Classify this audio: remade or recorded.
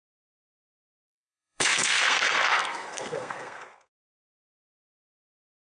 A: remade